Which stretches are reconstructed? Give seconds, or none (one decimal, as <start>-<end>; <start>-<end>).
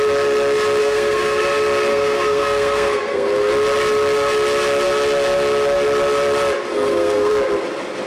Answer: 0.8-1.4; 1.9-3.5; 6.7-7.3